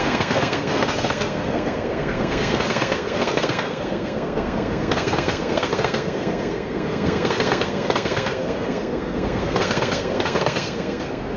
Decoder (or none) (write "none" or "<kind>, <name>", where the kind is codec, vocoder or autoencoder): codec, SNAC